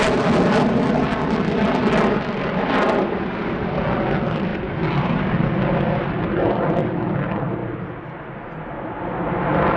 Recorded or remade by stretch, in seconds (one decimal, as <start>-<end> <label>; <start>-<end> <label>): 0.0-9.8 recorded